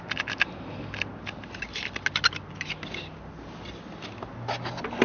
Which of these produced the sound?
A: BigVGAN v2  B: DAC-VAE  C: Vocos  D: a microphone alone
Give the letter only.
D